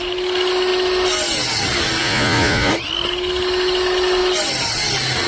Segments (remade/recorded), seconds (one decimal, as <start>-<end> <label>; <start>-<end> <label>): 0.0-2.0 recorded; 2.0-2.7 remade; 2.7-5.3 recorded